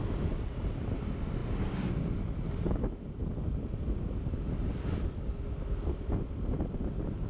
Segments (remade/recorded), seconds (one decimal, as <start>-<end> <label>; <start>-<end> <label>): 0.0-7.3 recorded